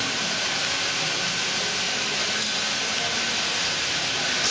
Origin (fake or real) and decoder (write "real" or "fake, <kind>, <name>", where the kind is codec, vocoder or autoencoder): real